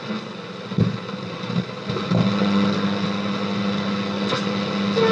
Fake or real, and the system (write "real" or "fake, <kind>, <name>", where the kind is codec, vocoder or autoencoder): real